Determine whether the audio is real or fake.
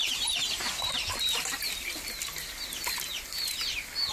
real